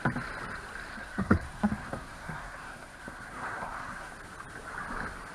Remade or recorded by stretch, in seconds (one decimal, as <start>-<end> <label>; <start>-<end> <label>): 0.0-0.9 recorded; 0.9-4.1 remade; 4.1-5.3 recorded